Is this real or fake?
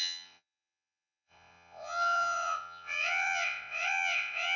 fake